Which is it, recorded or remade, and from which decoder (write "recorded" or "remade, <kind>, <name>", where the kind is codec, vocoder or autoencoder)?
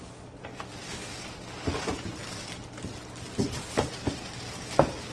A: recorded